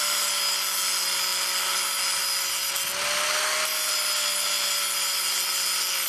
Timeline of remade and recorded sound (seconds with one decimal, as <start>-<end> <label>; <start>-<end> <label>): 0.0-6.1 recorded